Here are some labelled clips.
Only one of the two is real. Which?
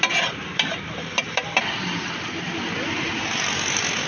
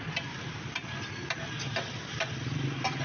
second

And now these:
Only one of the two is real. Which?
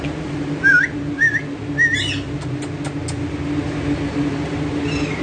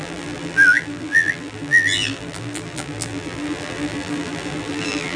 first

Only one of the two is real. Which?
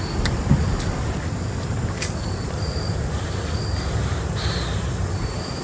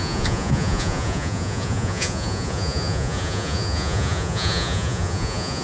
first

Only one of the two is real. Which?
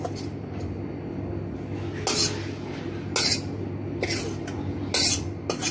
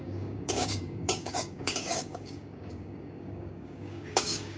first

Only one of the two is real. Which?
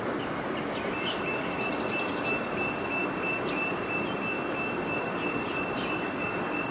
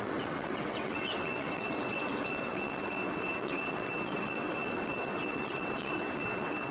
first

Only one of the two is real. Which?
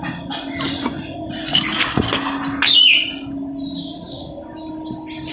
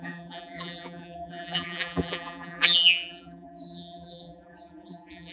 first